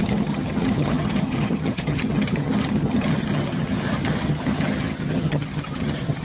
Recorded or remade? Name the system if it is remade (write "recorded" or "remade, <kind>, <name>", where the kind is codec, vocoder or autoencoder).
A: remade, vocoder, HiFi-GAN